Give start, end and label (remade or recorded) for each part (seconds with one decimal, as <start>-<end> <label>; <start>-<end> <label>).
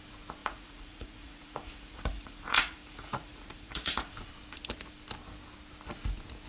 0.0-0.4 recorded; 0.4-4.3 remade; 4.3-6.5 recorded